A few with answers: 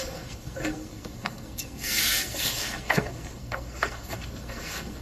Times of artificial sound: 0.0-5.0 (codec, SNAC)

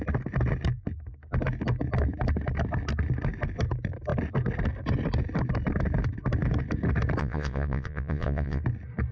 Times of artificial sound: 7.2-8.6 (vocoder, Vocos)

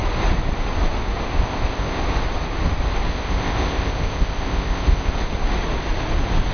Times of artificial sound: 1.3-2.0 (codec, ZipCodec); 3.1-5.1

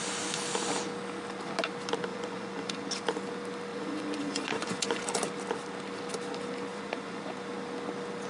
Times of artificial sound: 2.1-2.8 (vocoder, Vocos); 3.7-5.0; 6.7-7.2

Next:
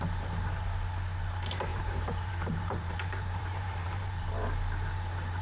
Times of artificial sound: 1.7-4.3 (vocoder, BigVGAN v2)

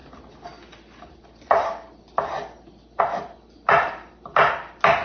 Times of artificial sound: none

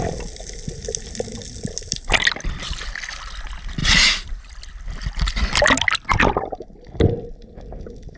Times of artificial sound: 3.8-4.5 (vocoder, BigVGAN v2)